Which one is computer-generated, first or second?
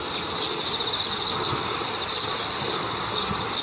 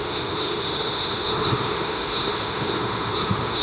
second